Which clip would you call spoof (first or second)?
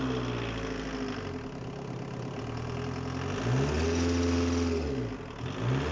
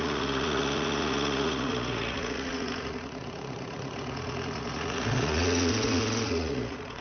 second